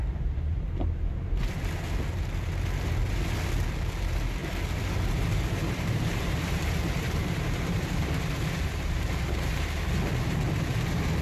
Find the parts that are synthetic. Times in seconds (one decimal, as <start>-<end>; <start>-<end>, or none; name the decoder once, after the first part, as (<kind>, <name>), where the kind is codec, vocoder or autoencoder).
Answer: 0.0-1.6 (vocoder, BigVGAN v2); 5.6-9.8